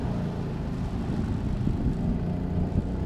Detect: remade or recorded recorded